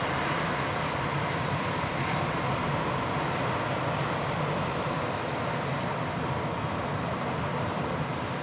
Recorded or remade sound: recorded